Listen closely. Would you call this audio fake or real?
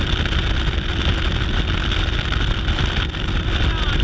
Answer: real